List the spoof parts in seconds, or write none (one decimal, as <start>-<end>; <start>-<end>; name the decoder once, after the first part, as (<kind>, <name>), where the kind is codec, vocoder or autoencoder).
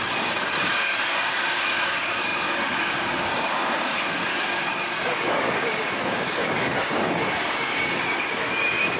0.0-9.0 (codec, DAC)